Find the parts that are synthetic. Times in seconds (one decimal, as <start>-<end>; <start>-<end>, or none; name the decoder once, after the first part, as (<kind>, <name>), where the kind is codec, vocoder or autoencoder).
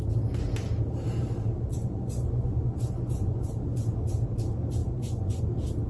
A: 1.8-3.5 (vocoder, Vocos); 4.8-5.4